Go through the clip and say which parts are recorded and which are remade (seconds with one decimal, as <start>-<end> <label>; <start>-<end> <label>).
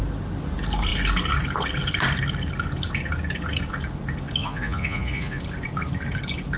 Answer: 0.0-4.4 recorded; 4.4-5.4 remade; 5.4-6.6 recorded